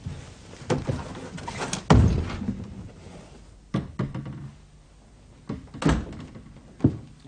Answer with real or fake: real